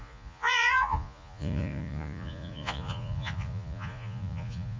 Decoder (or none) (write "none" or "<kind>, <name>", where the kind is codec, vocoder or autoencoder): vocoder, Vocos